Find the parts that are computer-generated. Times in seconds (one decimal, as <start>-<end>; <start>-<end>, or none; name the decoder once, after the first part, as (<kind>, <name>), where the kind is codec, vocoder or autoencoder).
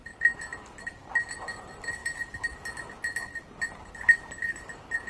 none